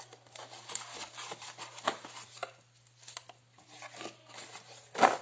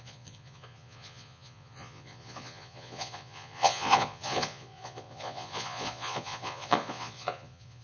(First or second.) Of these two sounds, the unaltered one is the first